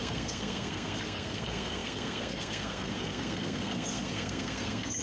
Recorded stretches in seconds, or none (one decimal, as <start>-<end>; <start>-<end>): none